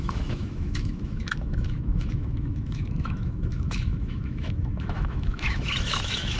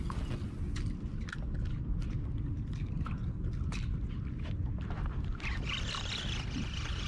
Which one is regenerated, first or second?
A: first